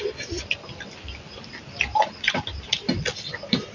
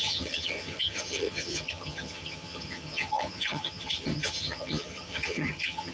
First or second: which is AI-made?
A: second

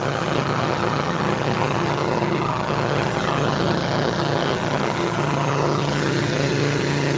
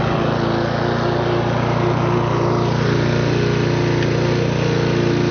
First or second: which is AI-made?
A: first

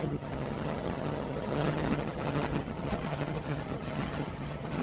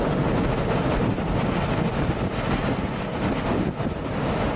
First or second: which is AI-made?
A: first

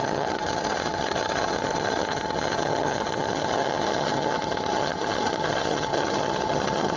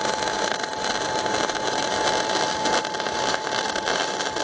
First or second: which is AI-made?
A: first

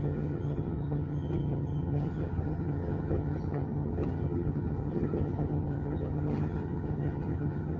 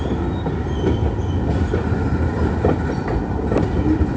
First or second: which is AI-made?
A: first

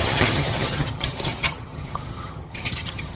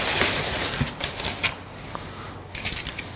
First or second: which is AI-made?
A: first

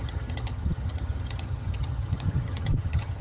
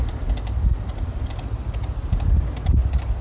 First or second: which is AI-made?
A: first